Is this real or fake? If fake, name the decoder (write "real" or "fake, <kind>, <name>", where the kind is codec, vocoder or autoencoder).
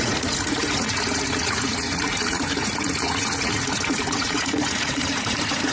fake, vocoder, Vocos